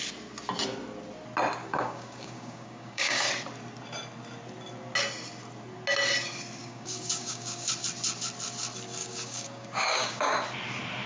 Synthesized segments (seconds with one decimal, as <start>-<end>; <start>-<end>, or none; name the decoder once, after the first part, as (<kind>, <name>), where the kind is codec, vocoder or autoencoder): 1.6-3.3 (codec, DAC); 6.6-7.7; 9.0-10.3